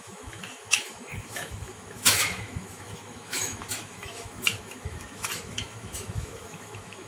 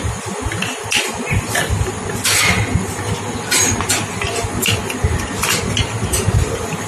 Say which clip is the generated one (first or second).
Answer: first